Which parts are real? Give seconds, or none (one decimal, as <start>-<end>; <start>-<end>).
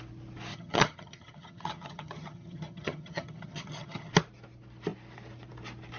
0.0-0.5; 4.1-6.0